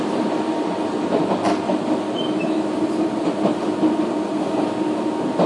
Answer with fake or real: real